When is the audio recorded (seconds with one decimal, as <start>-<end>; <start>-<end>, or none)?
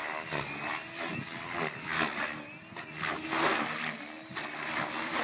0.0-5.2